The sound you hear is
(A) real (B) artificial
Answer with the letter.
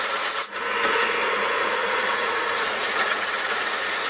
B